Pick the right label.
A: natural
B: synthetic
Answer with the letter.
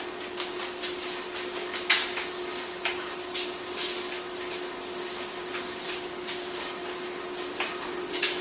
A